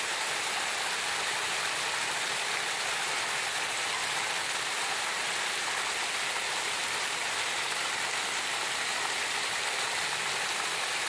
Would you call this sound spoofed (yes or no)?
no